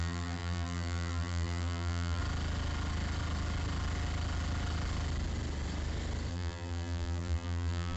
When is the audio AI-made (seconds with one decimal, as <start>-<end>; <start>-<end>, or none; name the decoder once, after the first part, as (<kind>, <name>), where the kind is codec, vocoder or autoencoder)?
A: 0.0-2.2 (vocoder, BigVGAN v2); 6.3-8.0

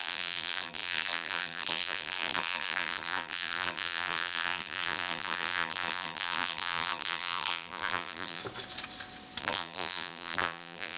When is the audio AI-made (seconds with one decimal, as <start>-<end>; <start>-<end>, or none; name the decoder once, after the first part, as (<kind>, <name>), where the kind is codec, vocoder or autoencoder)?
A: 0.0-8.4 (vocoder, BigVGAN v2); 9.4-11.0

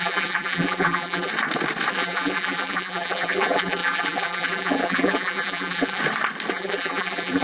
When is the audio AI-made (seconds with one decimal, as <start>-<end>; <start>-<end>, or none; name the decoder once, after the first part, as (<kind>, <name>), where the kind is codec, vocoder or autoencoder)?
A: 0.0-1.3 (vocoder, BigVGAN v2); 1.9-6.0; 6.5-7.4

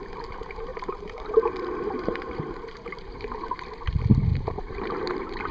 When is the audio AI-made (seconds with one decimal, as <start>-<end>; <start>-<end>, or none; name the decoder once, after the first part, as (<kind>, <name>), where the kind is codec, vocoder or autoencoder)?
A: 0.7-3.6 (vocoder, BigVGAN v2); 4.3-5.5

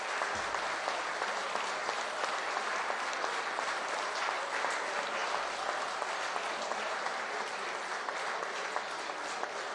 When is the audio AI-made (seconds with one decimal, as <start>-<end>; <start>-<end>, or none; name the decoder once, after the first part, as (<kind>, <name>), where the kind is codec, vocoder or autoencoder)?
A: 5.2-8.2 (vocoder, BigVGAN v2)